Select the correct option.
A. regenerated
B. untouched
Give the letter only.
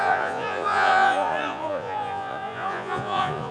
A